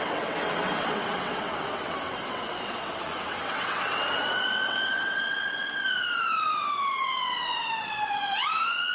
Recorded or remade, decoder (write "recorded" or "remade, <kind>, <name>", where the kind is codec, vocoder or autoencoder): remade, vocoder, WaveNeXt